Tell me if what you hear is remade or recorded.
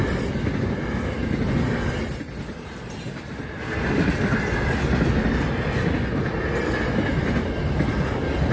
recorded